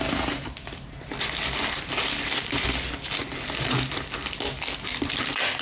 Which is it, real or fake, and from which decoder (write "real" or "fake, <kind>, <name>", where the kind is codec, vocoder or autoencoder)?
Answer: real